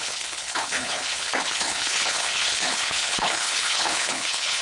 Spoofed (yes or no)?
yes